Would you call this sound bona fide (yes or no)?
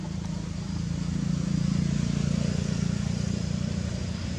yes